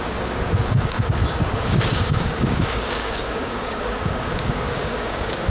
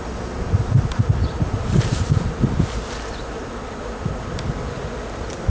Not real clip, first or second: first